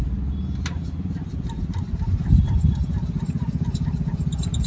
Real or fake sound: real